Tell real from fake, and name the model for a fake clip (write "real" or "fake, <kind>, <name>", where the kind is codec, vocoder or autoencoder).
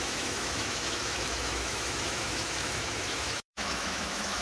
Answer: fake, autoencoder, DAC-VAE